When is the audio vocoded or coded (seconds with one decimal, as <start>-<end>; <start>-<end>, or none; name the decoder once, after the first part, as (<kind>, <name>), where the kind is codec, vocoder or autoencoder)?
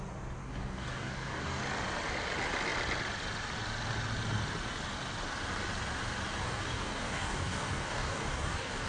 0.4-1.6 (codec, DAC); 6.4-8.9